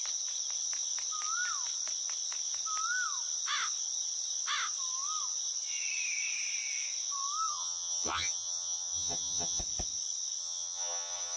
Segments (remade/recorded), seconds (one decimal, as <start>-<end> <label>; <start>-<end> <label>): 0.0-7.5 recorded; 7.5-9.6 remade; 9.6-10.4 recorded; 10.4-11.4 remade